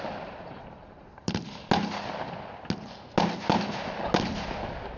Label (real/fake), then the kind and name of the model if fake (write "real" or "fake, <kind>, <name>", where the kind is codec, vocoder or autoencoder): real